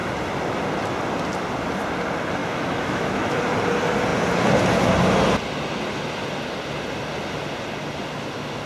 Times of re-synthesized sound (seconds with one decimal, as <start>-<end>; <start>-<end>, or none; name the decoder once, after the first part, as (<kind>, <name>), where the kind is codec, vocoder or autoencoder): 2.4-3.4 (autoencoder, DAC-VAE)